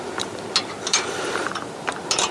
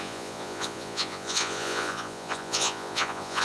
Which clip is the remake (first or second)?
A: second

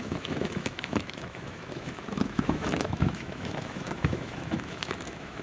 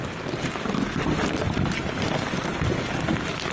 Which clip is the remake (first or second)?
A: first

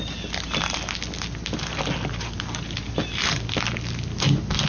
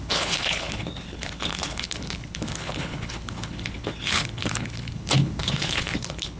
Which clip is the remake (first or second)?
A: second